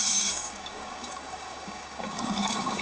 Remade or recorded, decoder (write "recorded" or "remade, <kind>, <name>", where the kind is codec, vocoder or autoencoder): remade, codec, DAC